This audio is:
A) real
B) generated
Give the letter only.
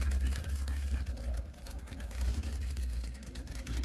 B